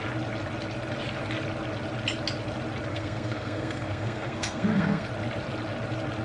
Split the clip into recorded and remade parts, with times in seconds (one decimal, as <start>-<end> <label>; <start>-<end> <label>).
0.0-2.9 recorded; 2.9-5.1 remade; 5.1-6.2 recorded